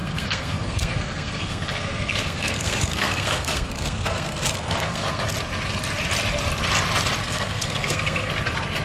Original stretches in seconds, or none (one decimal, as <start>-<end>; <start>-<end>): 5.2-7.2; 8.3-8.8